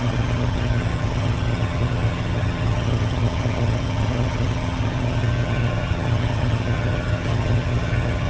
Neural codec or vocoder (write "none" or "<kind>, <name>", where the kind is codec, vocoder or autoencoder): vocoder, HiFi-GAN